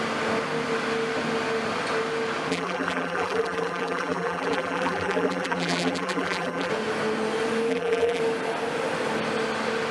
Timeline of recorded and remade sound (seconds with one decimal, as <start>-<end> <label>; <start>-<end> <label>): 0.0-2.5 recorded; 2.5-6.7 remade; 6.7-7.7 recorded; 7.7-8.2 remade; 8.2-9.9 recorded